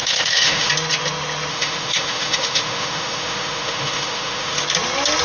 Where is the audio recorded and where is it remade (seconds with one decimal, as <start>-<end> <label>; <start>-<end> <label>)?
0.0-0.7 remade; 0.7-1.5 recorded; 1.5-4.6 remade; 4.6-5.2 recorded